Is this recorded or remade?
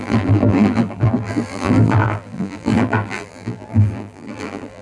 remade